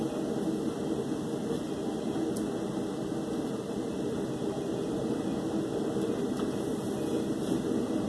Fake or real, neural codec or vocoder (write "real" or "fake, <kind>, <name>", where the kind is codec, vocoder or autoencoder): real